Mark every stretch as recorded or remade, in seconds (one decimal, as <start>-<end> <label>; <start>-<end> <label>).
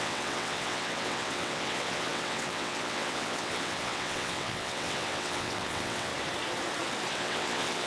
0.0-6.1 remade; 6.1-7.1 recorded; 7.1-7.9 remade